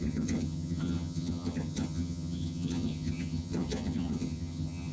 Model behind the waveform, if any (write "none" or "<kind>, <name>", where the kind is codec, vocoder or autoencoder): vocoder, HiFi-GAN